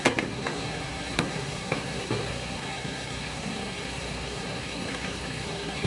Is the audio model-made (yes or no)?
yes